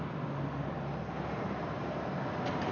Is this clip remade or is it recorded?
recorded